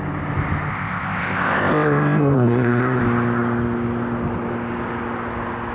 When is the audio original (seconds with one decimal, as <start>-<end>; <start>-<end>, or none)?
0.0-0.7; 3.0-5.7